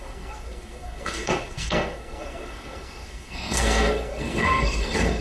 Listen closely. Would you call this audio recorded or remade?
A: remade